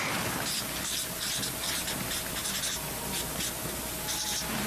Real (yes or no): yes